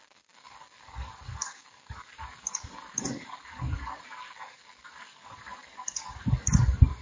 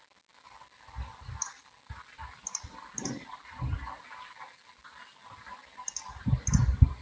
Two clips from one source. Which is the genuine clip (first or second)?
second